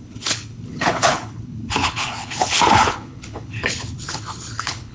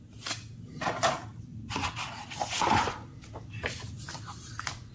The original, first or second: second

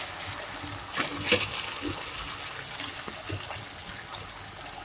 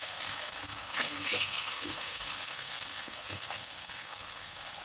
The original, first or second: first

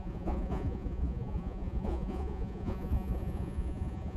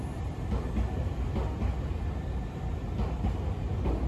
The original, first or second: second